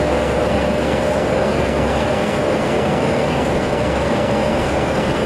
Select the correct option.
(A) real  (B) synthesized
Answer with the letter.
B